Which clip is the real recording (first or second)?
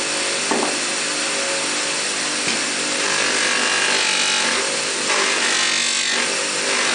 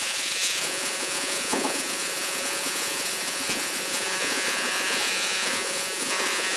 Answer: first